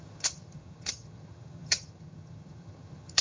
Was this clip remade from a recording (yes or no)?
yes